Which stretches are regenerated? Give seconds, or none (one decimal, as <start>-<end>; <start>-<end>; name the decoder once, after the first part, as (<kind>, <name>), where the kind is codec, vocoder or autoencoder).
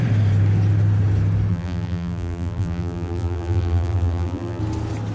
1.5-4.6 (vocoder, BigVGAN v2)